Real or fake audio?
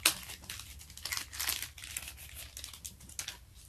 real